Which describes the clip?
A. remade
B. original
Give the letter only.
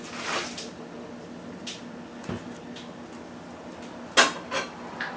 B